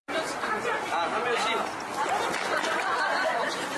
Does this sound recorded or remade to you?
remade